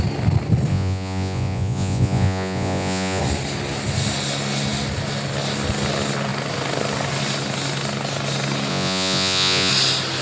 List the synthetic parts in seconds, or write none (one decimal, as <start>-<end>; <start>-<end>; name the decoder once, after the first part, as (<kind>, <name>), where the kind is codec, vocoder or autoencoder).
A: 0.7-3.2 (vocoder, Vocos); 8.7-9.7